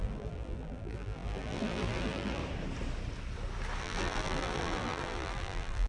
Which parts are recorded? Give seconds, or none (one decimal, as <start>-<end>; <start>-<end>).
2.4-3.8